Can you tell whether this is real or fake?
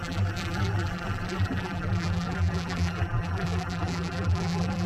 fake